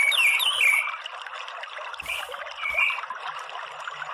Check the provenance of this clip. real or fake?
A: real